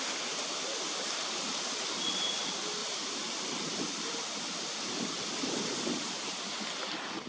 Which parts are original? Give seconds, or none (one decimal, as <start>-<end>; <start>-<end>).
0.0-7.3